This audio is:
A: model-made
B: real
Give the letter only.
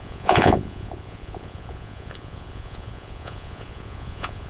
A